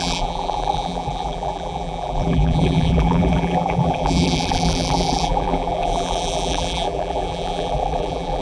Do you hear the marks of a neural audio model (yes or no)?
yes